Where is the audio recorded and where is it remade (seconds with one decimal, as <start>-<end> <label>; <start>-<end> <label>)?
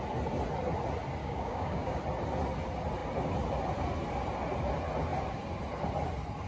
0.0-1.2 recorded; 1.2-2.0 remade; 2.0-6.5 recorded